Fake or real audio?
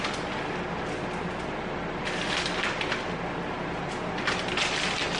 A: real